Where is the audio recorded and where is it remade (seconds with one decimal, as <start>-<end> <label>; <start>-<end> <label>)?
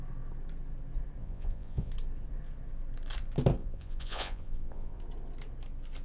0.0-1.2 recorded; 1.2-1.9 remade; 1.9-3.6 recorded; 3.6-5.0 remade; 5.0-6.0 recorded